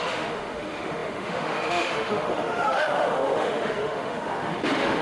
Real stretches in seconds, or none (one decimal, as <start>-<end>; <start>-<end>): none